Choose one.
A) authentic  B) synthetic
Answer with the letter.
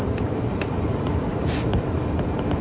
B